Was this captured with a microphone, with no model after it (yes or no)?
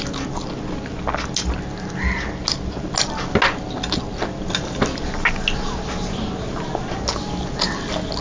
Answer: yes